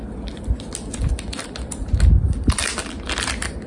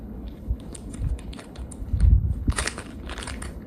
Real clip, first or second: first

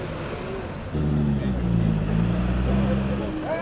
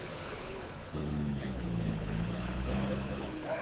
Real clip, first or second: first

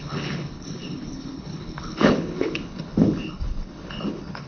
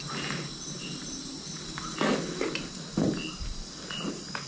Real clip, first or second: second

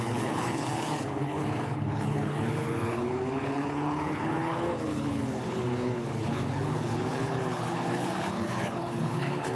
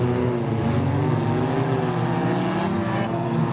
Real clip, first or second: second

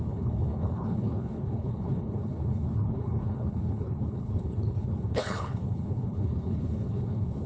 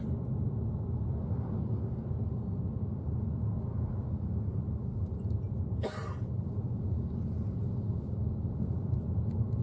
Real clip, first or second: second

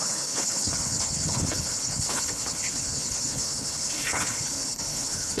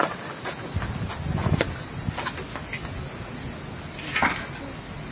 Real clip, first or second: second